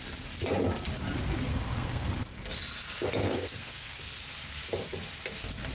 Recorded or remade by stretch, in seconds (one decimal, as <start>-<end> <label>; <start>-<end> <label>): 0.0-1.5 recorded; 1.5-2.3 remade; 2.3-3.2 recorded; 3.2-4.2 remade; 4.2-5.7 recorded